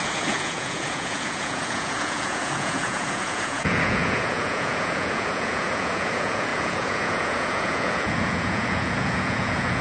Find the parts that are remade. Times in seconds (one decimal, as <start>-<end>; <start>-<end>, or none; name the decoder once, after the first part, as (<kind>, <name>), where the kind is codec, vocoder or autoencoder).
0.0-9.8 (vocoder, Vocos)